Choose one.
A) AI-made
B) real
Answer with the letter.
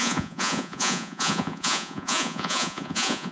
A